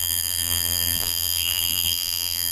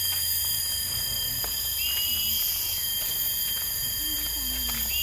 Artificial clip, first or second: first